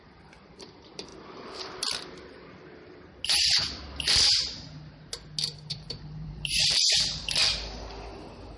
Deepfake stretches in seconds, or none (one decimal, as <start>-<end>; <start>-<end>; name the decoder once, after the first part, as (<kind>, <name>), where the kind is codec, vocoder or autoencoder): 0.0-1.1 (vocoder, BigVGAN v2); 5.7-7.4

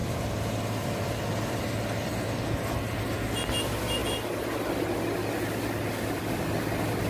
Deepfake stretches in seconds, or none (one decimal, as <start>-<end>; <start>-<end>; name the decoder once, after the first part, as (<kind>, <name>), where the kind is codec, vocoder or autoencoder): 0.0-1.6 (vocoder, BigVGAN v2)

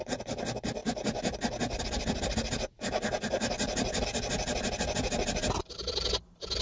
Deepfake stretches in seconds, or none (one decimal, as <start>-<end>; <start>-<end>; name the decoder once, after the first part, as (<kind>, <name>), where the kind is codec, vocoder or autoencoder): none

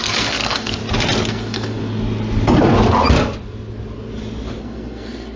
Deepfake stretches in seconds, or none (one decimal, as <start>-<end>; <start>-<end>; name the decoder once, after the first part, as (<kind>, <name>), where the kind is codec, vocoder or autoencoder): 0.0-0.8 (codec, SNAC); 1.3-1.8; 4.6-5.4